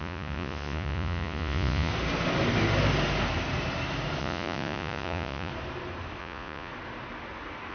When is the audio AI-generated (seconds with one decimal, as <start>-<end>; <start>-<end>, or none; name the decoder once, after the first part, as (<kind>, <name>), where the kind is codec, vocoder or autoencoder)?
0.0-1.9 (vocoder, Vocos); 4.2-5.5; 6.2-6.7